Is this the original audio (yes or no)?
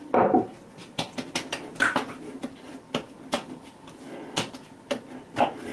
yes